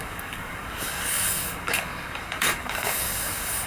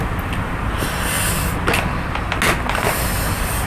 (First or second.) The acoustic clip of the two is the second